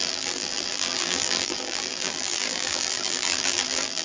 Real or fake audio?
fake